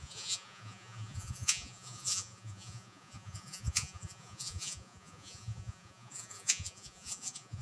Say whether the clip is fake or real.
fake